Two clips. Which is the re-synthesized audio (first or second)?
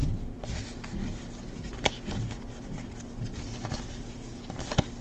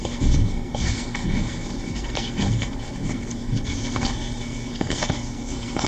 second